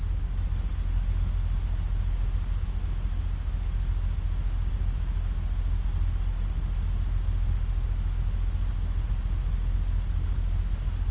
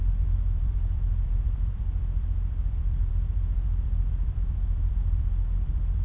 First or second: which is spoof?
second